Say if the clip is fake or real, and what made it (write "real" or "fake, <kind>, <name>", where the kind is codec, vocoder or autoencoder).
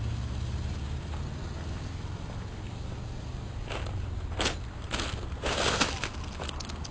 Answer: real